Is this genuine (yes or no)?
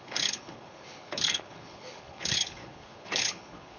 no